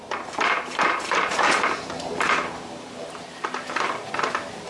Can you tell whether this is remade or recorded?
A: remade